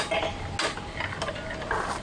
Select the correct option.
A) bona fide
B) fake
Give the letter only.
A